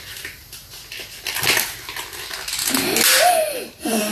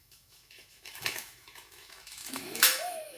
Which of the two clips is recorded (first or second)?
first